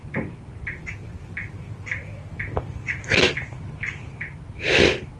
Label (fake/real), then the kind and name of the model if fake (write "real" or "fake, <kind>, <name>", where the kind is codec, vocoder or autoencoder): real